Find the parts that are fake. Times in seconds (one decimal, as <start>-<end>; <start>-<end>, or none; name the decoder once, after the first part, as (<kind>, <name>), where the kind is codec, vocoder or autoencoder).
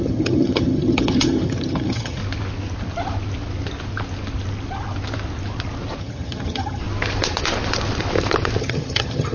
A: 0.0-2.2 (vocoder, HiFi-GAN); 6.0-6.8; 8.6-9.3